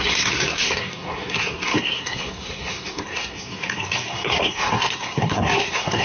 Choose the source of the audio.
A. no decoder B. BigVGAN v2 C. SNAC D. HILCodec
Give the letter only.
C